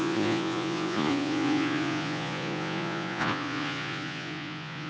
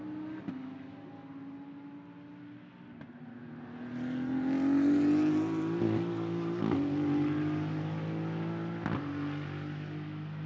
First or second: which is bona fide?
second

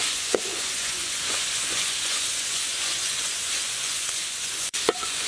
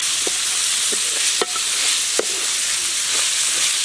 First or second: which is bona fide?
second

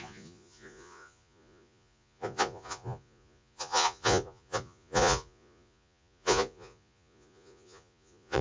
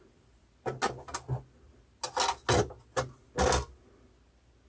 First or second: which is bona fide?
second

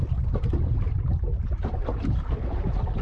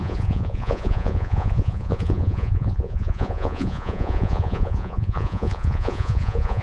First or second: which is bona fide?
first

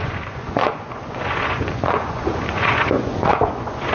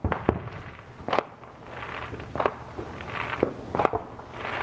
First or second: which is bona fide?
second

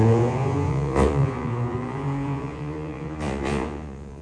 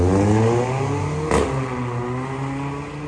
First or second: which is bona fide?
second